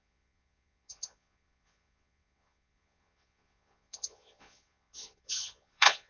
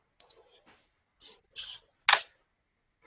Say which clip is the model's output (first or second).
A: first